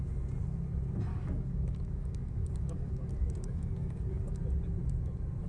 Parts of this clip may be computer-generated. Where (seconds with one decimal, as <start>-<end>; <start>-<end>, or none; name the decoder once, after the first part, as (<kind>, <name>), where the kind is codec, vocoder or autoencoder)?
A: 1.1-4.4 (codec, DAC)